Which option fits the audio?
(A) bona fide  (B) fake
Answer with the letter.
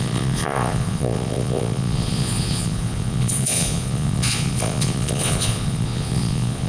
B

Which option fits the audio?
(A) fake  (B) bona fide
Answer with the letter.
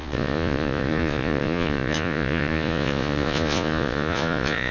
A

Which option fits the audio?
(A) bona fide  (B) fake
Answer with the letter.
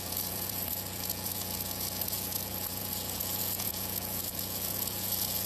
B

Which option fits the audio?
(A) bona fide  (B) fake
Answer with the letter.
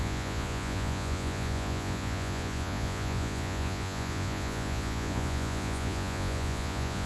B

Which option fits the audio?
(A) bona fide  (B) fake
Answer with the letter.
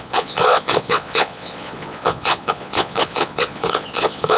B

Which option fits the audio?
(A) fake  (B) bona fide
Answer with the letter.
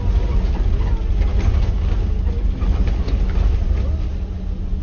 B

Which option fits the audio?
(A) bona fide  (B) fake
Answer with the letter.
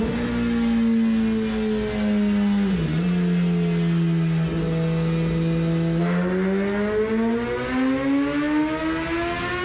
A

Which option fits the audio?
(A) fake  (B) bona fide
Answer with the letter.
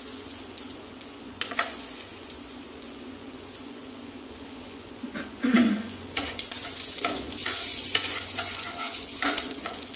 A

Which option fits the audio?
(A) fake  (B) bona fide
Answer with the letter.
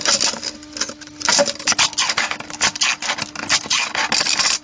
B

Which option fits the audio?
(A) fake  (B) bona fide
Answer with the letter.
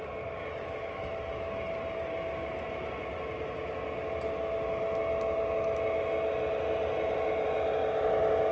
B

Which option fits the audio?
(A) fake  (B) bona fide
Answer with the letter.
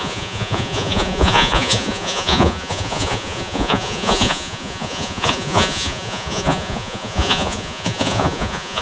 A